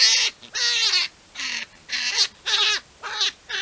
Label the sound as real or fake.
real